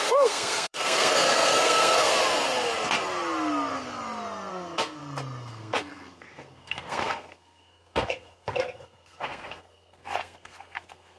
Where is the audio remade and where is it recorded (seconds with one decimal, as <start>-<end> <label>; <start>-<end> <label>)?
0.0-2.1 remade; 2.1-4.5 recorded; 4.5-5.0 remade; 5.0-5.5 recorded; 5.5-11.2 remade